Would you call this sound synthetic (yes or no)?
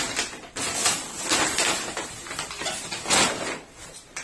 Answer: no